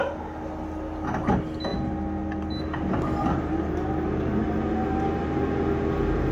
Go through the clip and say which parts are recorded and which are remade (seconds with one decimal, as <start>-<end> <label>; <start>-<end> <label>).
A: 0.0-6.3 recorded